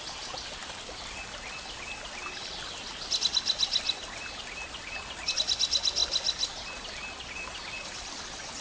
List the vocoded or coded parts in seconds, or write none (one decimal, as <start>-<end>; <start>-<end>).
none